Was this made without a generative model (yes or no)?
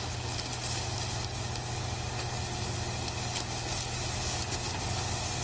yes